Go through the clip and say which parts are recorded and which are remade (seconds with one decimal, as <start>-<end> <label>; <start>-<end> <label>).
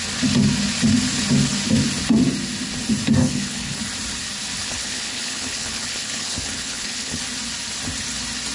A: 0.0-3.2 recorded; 3.2-3.8 remade; 3.8-4.6 recorded; 4.6-7.2 remade; 7.2-8.5 recorded